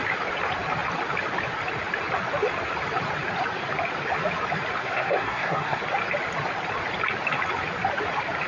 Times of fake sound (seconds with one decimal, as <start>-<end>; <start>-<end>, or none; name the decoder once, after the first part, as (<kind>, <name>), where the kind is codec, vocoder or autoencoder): 4.8-5.8 (codec, SNAC)